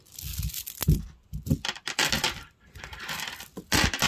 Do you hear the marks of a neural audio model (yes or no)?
no